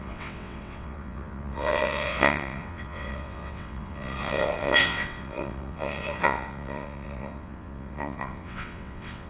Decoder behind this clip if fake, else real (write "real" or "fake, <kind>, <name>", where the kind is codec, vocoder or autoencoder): fake, vocoder, WaveNeXt